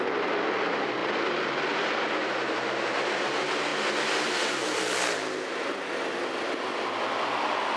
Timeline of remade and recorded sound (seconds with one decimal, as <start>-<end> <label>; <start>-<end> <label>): 0.0-7.8 recorded